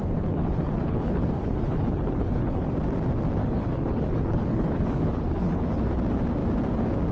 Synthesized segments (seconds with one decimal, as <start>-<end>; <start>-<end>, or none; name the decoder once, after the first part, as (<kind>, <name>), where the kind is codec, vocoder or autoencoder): 0.0-2.7 (codec, HILCodec); 3.4-5.9